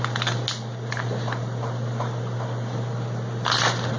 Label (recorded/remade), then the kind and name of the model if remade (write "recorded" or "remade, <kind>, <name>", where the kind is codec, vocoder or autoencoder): recorded